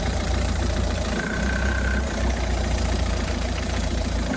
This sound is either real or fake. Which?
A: fake